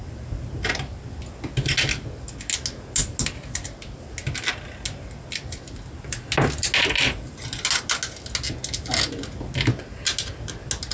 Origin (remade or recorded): recorded